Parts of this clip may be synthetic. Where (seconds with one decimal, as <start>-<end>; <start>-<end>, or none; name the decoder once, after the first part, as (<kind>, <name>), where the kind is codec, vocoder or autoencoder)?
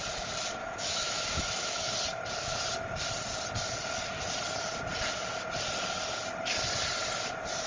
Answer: 0.6-1.9 (autoencoder, DAC-VAE)